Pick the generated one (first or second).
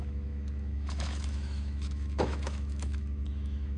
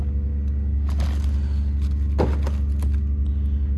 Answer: first